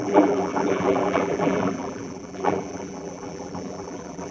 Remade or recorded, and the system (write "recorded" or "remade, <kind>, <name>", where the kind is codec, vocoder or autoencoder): remade, vocoder, BigVGAN v2